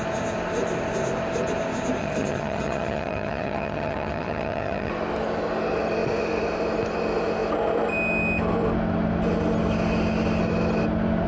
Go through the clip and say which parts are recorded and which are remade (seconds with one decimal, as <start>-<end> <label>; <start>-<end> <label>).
0.0-2.0 recorded; 2.0-4.9 remade; 4.9-11.3 recorded